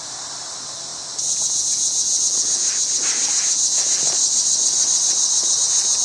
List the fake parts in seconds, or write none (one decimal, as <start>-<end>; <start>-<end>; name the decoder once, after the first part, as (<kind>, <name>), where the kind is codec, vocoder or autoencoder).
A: 4.2-5.6 (vocoder, Vocos)

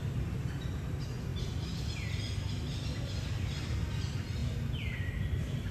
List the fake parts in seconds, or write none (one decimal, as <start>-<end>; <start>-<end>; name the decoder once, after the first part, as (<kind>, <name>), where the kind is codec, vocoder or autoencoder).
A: none